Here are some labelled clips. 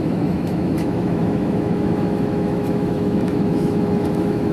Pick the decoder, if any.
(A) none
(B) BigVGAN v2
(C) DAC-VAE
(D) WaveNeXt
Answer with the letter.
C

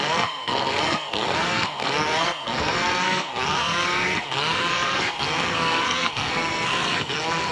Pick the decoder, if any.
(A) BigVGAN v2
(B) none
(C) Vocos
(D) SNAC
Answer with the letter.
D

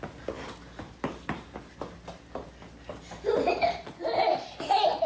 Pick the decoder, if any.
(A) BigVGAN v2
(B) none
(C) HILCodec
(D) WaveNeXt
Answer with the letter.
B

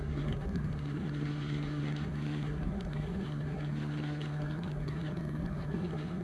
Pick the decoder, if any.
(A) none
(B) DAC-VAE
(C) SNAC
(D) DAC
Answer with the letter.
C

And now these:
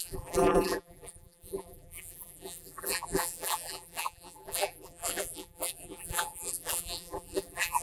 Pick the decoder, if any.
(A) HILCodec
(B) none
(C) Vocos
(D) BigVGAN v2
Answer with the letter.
D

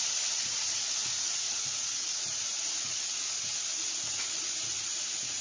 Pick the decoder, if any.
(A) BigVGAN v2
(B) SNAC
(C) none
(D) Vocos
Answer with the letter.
D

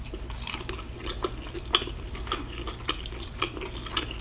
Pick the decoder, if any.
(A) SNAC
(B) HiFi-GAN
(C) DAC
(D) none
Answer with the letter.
D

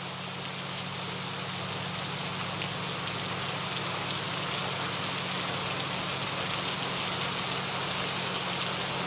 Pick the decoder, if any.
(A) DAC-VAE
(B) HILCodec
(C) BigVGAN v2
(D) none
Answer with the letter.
D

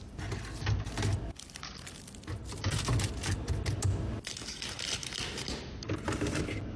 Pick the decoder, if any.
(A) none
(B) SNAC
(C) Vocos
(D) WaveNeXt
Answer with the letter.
A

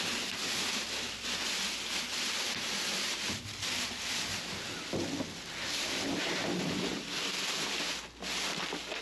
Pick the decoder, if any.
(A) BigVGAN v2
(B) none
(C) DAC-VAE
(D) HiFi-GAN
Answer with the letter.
B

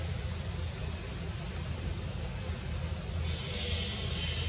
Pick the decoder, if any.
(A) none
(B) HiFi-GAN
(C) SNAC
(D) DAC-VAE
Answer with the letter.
A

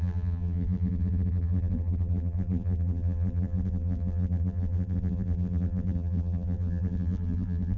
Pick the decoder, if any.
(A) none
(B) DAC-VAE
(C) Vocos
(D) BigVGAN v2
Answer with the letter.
D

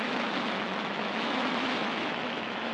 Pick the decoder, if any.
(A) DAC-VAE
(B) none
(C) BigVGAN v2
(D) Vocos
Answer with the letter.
A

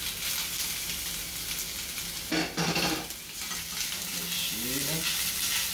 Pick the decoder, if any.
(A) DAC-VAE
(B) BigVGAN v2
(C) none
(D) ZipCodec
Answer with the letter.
C